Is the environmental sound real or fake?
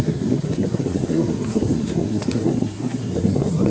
fake